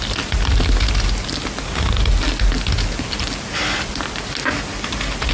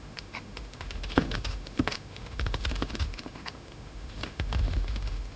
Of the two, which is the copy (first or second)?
second